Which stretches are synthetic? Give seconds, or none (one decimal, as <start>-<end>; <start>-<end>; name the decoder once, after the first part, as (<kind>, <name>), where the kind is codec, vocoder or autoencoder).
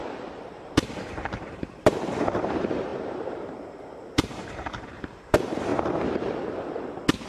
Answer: 0.0-5.7 (vocoder, BigVGAN v2)